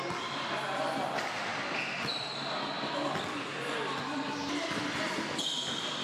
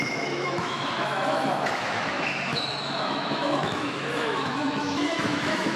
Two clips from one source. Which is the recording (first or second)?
first